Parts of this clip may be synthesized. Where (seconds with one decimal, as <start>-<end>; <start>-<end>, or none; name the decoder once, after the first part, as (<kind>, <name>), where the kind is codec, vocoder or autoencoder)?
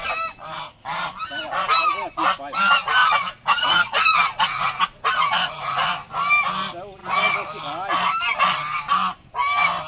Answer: 3.0-5.9 (vocoder, Vocos)